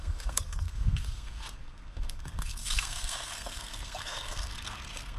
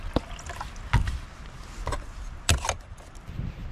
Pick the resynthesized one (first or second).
first